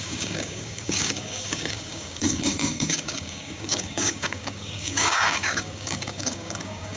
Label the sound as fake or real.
fake